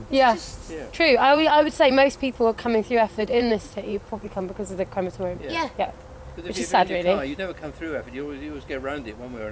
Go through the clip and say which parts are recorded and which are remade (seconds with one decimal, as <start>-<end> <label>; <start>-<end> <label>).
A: 0.0-1.2 recorded; 1.2-3.5 remade; 3.5-3.9 recorded; 3.9-4.4 remade; 4.4-9.5 recorded